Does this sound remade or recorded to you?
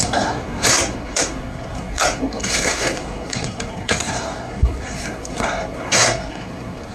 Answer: remade